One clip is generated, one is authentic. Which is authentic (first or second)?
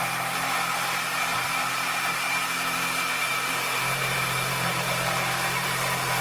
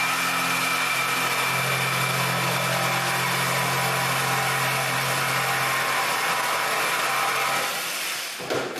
second